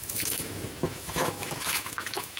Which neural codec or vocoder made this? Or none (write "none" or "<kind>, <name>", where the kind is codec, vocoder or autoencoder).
autoencoder, DAC-VAE